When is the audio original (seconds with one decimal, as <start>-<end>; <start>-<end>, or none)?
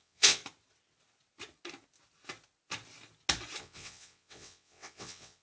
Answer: 0.4-3.6